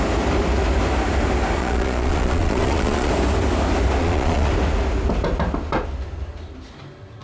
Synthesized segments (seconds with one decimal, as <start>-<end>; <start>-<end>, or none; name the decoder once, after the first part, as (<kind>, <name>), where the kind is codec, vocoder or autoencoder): 1.6-3.1 (vocoder, Vocos); 4.0-4.5